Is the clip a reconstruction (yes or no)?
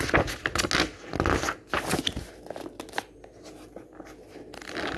no